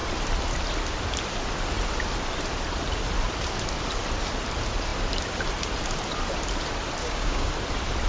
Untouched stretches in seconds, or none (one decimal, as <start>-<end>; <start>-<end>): 0.0-7.0; 7.5-8.1